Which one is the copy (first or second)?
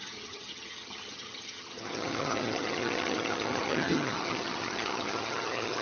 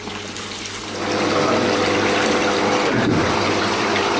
first